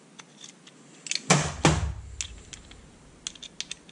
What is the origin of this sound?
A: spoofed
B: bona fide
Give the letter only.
B